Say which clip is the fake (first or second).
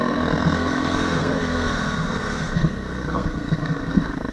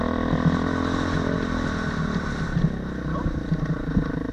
first